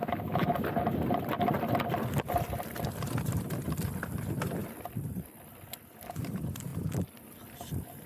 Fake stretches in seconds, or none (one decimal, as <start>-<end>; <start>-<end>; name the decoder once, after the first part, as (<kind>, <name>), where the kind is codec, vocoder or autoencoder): 0.0-0.5 (autoencoder, DAC-VAE)